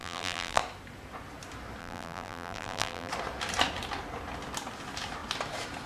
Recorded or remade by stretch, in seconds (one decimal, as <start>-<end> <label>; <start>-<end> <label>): 0.0-0.6 remade; 0.6-1.8 recorded; 1.8-3.1 remade; 3.1-5.9 recorded